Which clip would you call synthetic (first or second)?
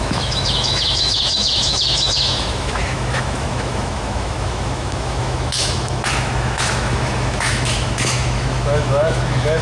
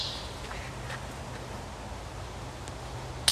first